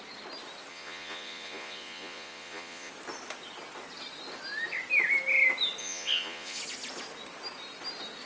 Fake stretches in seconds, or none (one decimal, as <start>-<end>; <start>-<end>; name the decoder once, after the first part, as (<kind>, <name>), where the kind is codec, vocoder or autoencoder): 0.7-2.9 (vocoder, Vocos); 5.8-6.6